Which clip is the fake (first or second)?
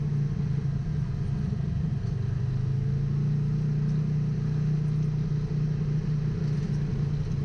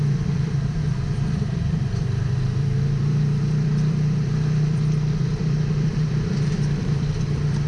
second